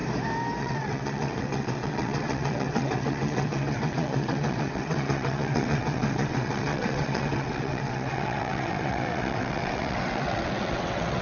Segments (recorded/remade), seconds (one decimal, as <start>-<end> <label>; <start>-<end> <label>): 0.0-0.6 recorded; 0.6-11.2 remade